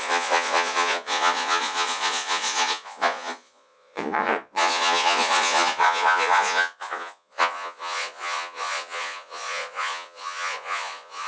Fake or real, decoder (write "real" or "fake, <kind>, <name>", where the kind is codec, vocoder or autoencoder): fake, vocoder, Vocos